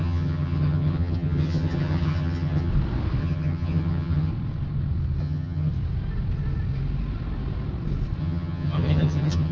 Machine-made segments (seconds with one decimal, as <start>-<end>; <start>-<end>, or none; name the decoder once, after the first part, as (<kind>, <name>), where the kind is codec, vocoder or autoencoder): 0.0-2.7 (vocoder, HiFi-GAN); 3.2-4.3; 5.2-5.7; 8.2-9.5